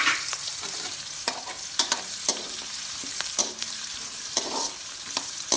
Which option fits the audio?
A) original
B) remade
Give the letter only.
B